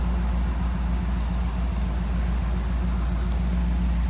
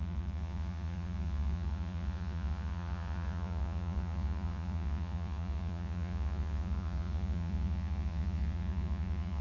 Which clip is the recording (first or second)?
first